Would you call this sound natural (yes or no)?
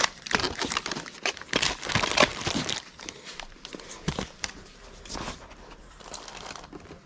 no